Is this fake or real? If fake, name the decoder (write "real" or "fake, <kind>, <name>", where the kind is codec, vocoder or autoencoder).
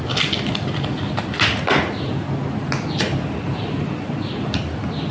real